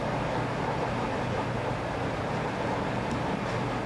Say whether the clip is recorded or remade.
recorded